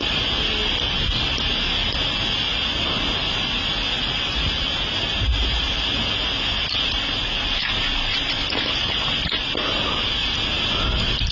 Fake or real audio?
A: real